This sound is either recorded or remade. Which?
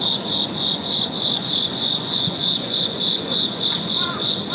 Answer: remade